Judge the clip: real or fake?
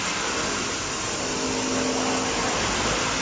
real